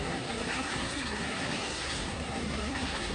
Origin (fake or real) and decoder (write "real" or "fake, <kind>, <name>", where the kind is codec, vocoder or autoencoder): fake, codec, SNAC